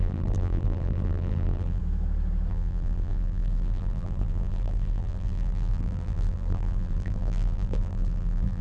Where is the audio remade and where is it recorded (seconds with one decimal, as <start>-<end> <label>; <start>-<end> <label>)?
0.0-1.8 remade; 1.8-2.5 recorded; 2.5-8.6 remade